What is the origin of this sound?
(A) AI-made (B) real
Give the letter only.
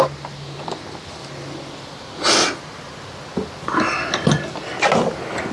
B